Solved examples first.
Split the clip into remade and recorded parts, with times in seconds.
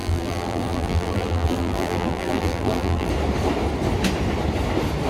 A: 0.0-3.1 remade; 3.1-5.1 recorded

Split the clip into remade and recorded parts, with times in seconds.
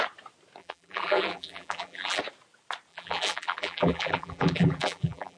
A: 0.0-0.6 recorded; 0.6-2.2 remade; 2.2-2.9 recorded; 2.9-5.4 remade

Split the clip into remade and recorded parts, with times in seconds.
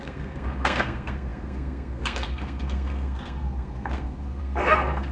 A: 0.0-5.1 remade